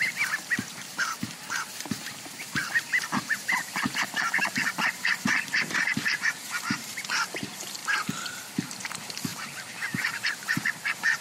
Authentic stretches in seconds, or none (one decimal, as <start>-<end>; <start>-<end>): 7.8-8.5